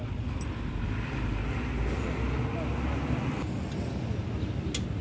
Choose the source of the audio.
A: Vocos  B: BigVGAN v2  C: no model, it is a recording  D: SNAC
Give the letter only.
C